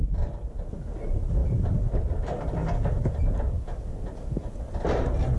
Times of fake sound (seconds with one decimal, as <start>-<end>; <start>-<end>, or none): none